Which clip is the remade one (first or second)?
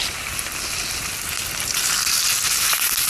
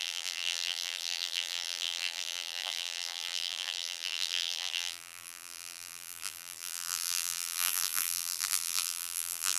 second